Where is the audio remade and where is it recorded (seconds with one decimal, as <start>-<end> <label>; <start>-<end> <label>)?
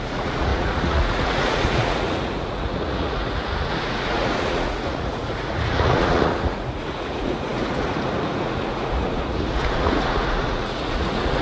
0.0-11.4 remade